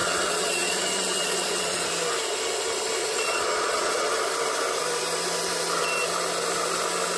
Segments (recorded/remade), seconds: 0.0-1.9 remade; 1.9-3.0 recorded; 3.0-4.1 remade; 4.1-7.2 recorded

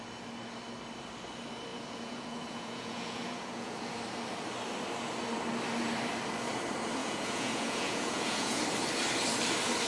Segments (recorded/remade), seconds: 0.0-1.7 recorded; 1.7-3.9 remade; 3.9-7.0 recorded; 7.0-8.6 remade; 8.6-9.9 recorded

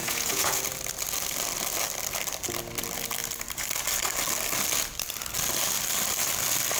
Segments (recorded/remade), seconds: 0.0-0.6 remade; 0.6-6.8 recorded

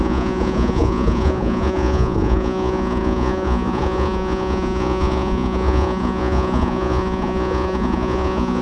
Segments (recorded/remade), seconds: 0.0-8.6 remade

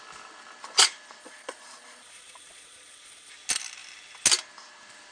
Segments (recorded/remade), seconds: 0.0-1.2 recorded; 1.2-3.3 remade; 3.3-5.1 recorded